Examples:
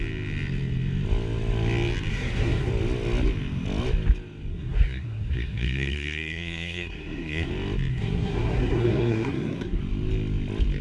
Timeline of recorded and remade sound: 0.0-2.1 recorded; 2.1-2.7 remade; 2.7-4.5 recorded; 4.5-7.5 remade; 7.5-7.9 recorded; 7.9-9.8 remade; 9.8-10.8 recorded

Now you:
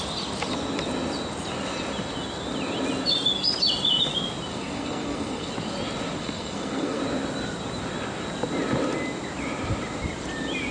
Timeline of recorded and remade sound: 0.0-4.5 recorded; 4.5-5.5 remade; 5.5-6.2 recorded; 6.2-7.0 remade; 7.0-10.7 recorded

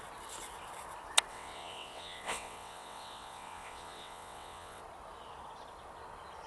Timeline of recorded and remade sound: 0.0-1.3 recorded; 1.3-4.8 remade; 4.8-6.5 recorded

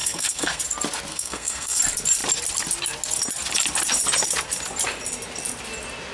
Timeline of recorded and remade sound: 0.0-0.6 remade; 0.6-1.1 recorded; 1.1-1.8 remade; 1.8-6.1 recorded

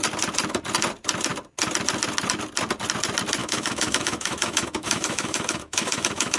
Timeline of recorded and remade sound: 0.0-3.4 recorded; 3.4-6.4 remade

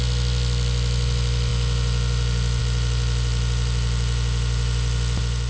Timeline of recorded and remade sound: 0.0-5.5 remade

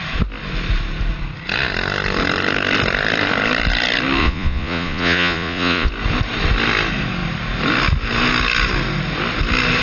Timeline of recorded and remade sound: 0.0-4.2 recorded; 4.2-5.9 remade; 5.9-9.8 recorded

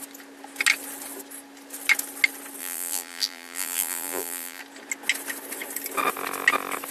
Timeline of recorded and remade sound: 0.0-2.6 recorded; 2.6-4.6 remade; 4.6-6.9 recorded